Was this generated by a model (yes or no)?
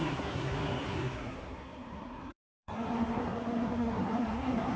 yes